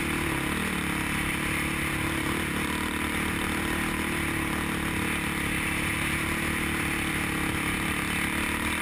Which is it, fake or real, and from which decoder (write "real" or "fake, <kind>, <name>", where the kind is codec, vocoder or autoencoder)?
real